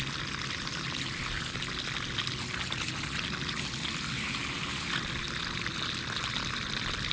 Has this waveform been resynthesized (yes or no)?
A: no